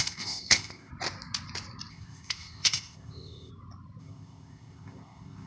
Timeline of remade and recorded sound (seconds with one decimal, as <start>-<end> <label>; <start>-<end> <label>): 0.0-0.9 remade; 0.9-1.9 recorded; 1.9-3.5 remade; 3.5-4.0 recorded; 4.0-5.5 remade